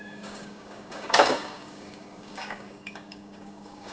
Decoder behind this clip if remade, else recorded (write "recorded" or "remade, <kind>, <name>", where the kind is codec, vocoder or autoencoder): remade, codec, DAC